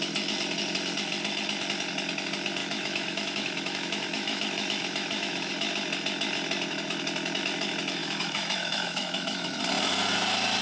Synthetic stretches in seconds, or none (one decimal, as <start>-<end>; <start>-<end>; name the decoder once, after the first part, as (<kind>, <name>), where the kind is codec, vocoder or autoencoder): 2.6-5.5 (autoencoder, DAC-VAE); 8.0-9.6